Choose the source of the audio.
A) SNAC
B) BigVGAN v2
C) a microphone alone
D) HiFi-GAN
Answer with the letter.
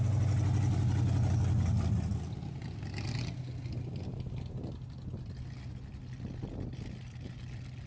C